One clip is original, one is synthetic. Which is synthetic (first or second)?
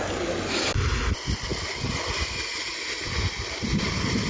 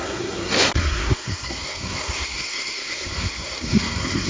second